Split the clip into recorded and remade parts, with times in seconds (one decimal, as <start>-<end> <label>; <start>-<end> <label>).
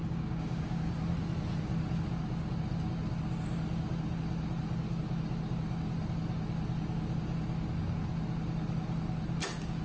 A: 0.0-0.9 remade; 0.9-9.8 recorded